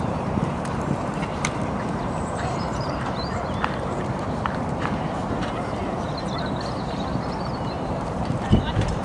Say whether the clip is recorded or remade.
remade